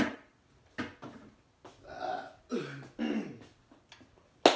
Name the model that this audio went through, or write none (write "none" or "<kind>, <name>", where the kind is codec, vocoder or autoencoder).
none